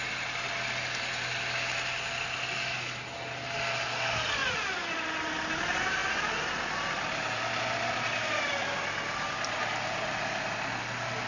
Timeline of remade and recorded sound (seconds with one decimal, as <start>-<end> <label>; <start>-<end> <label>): 0.0-11.3 recorded